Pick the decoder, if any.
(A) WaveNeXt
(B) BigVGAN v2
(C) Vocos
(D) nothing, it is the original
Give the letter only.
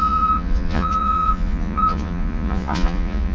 C